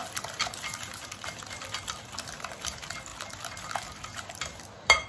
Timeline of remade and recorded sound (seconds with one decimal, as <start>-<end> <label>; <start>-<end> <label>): 0.0-5.1 recorded